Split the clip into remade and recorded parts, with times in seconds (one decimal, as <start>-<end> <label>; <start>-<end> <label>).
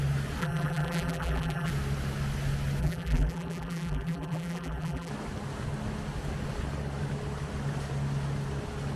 0.0-0.4 recorded; 0.4-1.7 remade; 1.7-2.8 recorded; 2.8-5.1 remade; 5.1-9.0 recorded